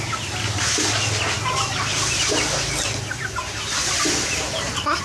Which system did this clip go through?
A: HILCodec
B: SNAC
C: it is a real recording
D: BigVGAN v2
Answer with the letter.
C